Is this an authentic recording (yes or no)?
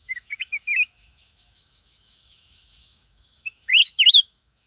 no